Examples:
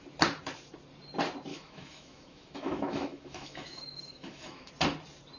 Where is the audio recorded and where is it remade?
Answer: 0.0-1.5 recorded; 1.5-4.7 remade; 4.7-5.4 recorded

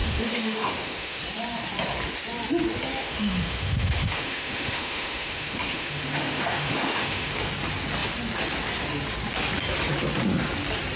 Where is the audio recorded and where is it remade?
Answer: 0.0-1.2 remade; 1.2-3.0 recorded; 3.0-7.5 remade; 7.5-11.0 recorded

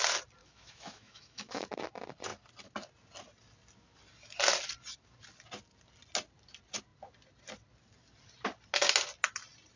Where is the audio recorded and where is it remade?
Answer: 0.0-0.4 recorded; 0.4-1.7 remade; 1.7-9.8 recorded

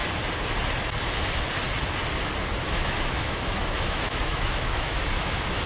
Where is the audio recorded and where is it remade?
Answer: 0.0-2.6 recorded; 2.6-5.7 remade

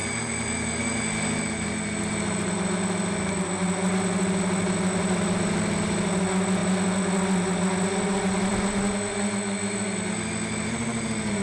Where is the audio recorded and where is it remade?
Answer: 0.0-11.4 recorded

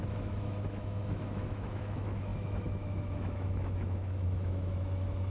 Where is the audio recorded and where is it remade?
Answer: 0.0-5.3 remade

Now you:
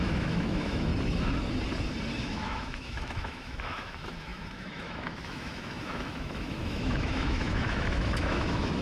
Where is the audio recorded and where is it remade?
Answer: 0.0-0.9 remade; 0.9-2.2 recorded; 2.2-8.8 remade